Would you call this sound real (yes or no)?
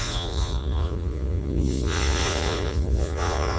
no